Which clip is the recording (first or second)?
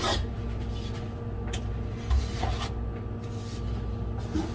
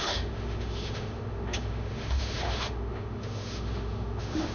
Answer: first